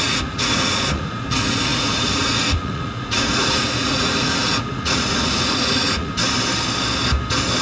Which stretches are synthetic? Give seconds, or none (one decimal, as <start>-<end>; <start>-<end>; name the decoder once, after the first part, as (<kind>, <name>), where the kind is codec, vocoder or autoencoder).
0.0-6.1 (vocoder, Vocos)